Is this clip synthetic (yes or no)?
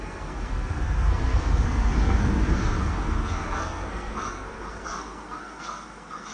yes